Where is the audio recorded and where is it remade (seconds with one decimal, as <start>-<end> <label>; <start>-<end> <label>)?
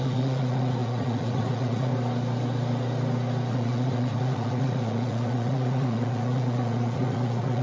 0.0-1.9 remade; 1.9-3.5 recorded; 3.5-7.6 remade